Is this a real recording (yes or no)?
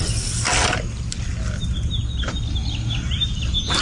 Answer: yes